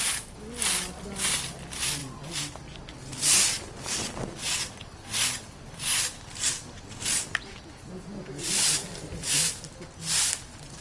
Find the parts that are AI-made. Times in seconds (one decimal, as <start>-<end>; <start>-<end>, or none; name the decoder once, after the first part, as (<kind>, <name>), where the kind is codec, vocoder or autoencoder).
8.9-9.7 (vocoder, BigVGAN v2)